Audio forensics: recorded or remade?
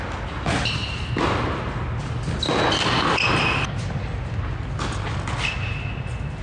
recorded